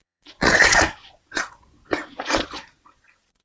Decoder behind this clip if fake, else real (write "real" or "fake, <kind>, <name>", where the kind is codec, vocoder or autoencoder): fake, vocoder, Vocos